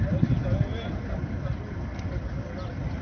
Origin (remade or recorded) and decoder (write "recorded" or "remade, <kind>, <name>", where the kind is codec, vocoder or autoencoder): recorded